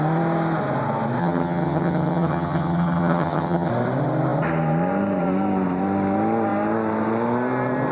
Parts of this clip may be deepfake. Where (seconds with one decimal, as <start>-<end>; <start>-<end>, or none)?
1.2-3.7